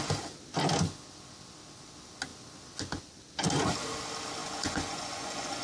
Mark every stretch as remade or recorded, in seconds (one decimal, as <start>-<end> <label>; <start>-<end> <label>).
0.0-4.4 recorded; 4.4-5.6 remade